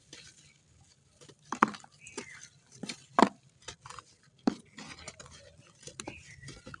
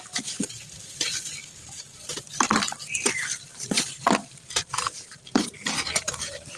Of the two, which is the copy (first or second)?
second